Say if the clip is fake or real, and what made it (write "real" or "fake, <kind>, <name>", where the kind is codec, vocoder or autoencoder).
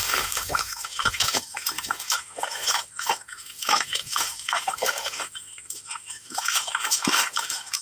fake, autoencoder, DAC-VAE